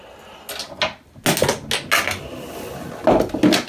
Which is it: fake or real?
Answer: real